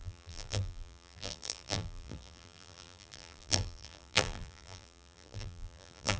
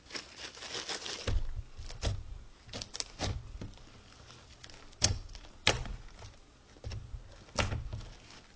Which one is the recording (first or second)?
second